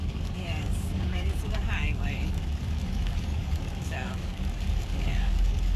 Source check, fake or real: fake